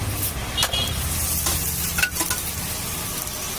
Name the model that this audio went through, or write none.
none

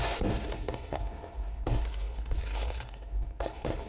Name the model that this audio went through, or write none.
codec, SNAC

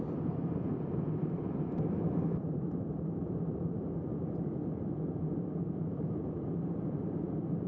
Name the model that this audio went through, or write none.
vocoder, BigVGAN v2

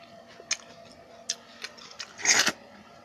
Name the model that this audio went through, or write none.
none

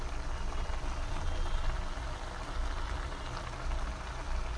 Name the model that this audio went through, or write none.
none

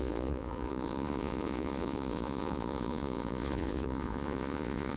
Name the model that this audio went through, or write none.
vocoder, Vocos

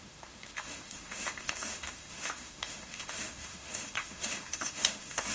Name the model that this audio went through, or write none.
autoencoder, DAC-VAE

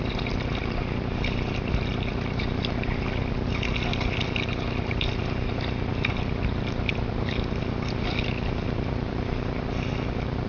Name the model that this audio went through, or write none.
none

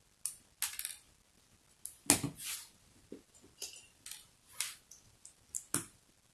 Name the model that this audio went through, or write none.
none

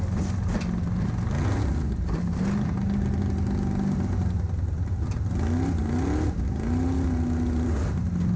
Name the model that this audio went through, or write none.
none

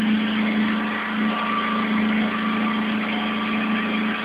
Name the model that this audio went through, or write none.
none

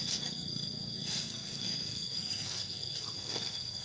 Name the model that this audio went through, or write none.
codec, SNAC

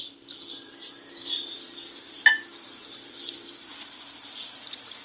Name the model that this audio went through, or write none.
none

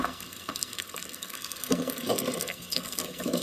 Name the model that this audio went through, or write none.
codec, SNAC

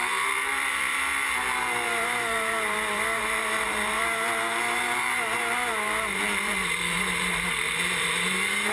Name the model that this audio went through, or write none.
vocoder, BigVGAN v2